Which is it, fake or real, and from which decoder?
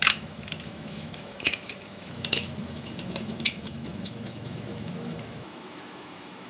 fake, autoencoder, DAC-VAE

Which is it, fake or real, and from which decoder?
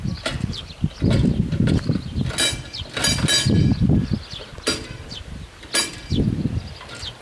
real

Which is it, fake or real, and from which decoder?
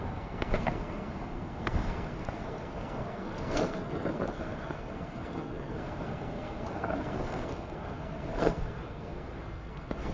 fake, codec, SNAC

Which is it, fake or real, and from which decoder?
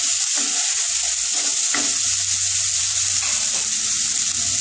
real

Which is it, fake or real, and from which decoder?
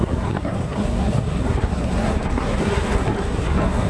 fake, codec, SNAC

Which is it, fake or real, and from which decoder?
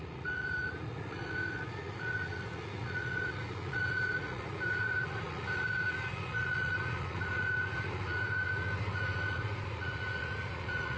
fake, vocoder, Vocos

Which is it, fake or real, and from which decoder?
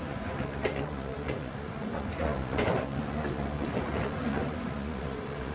fake, vocoder, Vocos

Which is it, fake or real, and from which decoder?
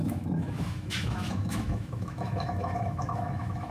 fake, autoencoder, DAC-VAE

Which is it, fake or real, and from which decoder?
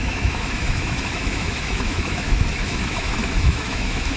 fake, autoencoder, DAC-VAE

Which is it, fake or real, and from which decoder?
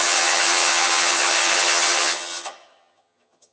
fake, vocoder, HiFi-GAN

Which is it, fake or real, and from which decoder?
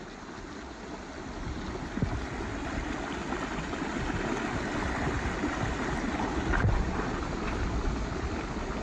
real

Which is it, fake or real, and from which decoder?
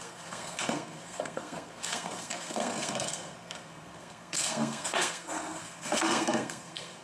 fake, codec, SNAC